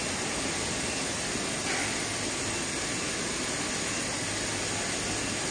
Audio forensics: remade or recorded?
recorded